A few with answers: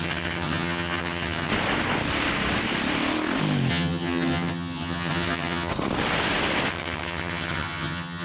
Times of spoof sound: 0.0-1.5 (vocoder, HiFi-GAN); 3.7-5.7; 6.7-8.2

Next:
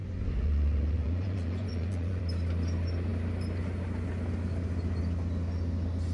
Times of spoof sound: 0.0-2.2 (vocoder, Vocos)

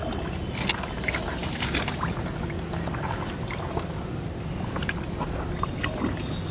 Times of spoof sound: none

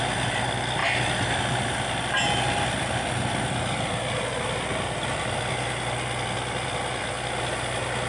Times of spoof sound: none

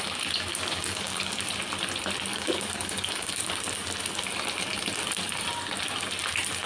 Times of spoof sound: 0.5-1.5 (codec, DAC); 2.3-3.5